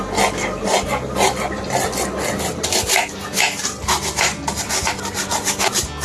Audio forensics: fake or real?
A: real